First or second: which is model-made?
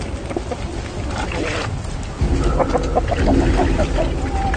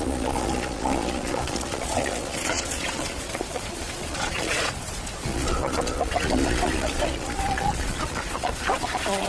second